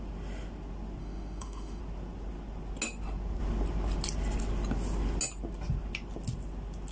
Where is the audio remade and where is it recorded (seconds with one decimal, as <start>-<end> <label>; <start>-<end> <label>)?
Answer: 0.0-1.0 recorded; 1.0-1.8 remade; 1.8-6.9 recorded